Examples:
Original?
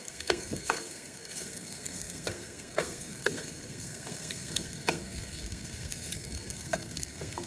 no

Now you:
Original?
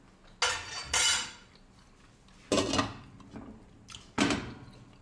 yes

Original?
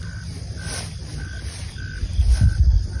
yes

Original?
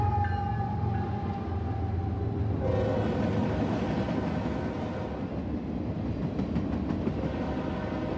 yes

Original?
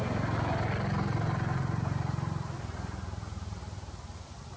yes